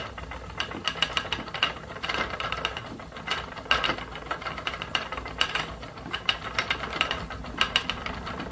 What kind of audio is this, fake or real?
fake